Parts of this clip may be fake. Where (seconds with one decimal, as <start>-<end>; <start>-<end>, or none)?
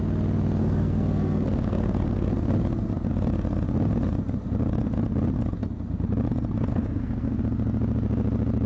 0.6-2.3; 6.7-7.4